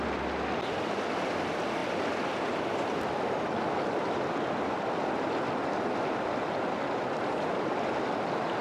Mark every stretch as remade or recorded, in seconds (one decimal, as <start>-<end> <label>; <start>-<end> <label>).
0.0-8.6 recorded